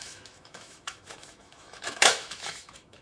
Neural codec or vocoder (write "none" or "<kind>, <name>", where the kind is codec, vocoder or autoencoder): autoencoder, DAC-VAE